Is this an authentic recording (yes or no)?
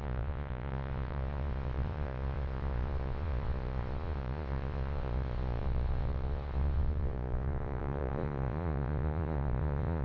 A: no